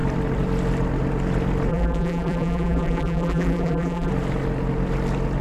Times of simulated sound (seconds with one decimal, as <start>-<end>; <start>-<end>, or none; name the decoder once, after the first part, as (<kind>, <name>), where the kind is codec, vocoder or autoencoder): 1.7-4.1 (vocoder, BigVGAN v2)